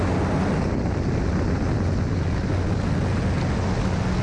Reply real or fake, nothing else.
real